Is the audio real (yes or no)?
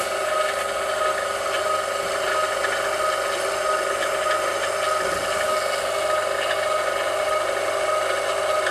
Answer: yes